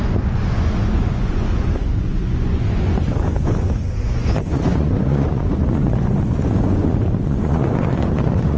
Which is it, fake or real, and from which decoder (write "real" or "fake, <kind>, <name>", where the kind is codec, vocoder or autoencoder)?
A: fake, vocoder, Vocos